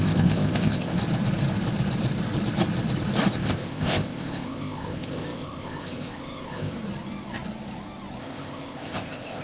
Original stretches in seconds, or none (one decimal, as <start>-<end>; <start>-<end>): 1.0-3.3; 6.8-8.2